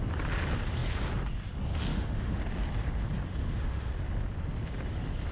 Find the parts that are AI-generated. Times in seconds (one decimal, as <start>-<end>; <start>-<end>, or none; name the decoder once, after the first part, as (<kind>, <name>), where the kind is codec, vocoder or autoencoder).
1.9-2.4 (autoencoder, DAC-VAE); 3.4-3.9